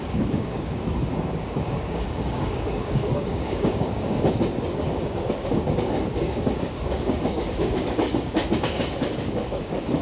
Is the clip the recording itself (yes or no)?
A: no